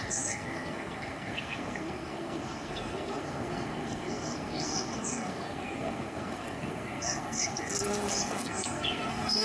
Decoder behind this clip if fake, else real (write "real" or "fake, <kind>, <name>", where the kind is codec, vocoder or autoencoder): fake, codec, SNAC